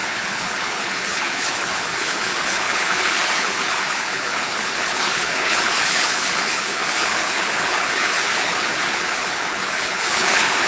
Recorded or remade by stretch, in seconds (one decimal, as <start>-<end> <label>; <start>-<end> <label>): 0.0-10.7 remade